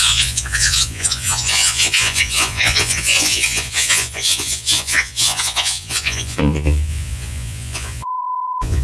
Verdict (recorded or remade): remade